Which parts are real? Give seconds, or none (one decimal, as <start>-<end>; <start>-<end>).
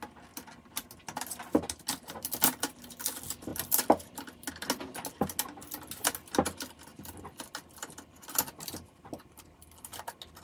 0.0-10.4